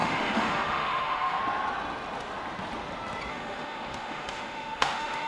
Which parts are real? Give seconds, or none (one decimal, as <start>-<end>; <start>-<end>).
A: 1.4-3.3